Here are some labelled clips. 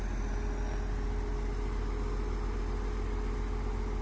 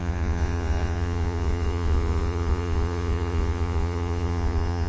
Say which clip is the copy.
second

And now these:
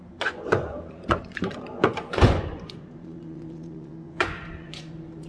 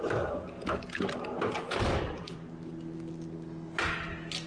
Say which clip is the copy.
first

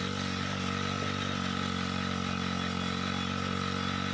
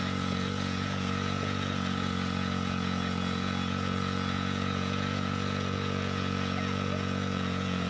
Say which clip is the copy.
second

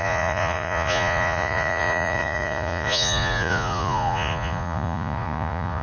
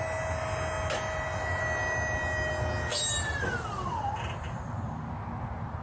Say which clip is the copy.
first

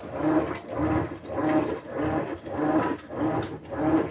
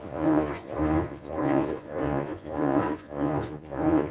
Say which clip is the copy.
second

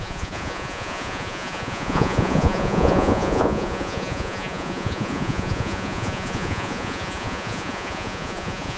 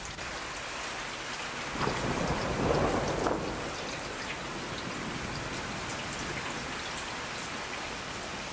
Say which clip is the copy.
first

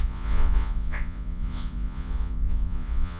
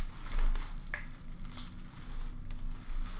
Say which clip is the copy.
first